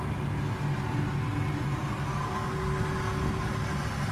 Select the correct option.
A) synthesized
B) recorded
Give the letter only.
B